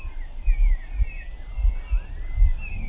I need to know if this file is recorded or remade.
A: recorded